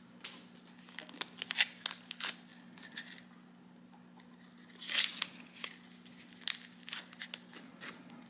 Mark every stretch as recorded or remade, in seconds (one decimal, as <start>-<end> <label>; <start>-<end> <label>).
0.0-8.3 recorded